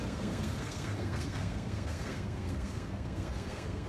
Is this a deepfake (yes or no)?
yes